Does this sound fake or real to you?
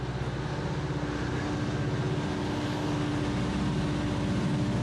real